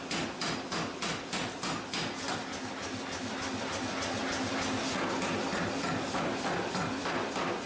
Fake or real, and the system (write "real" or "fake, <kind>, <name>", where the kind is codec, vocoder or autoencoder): real